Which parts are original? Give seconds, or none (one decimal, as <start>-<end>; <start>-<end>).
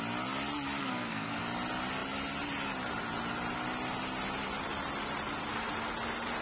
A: 0.0-0.8; 1.4-6.4